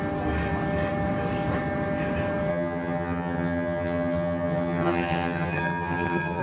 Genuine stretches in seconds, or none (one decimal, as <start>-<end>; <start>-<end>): 0.0-2.5